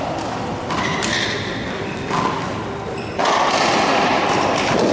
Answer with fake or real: fake